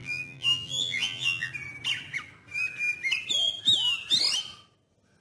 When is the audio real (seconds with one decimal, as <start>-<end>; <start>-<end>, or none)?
1.5-5.2